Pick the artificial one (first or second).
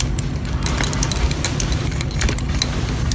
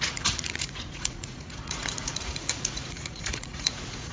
second